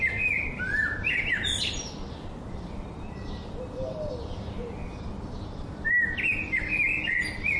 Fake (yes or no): no